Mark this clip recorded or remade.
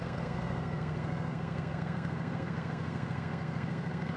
remade